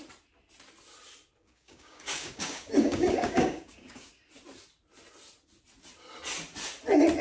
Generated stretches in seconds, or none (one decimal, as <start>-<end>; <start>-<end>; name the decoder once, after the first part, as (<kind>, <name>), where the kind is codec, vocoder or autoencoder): 1.4-4.1 (codec, DAC)